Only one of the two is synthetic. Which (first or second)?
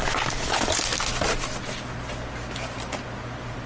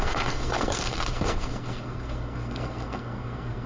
second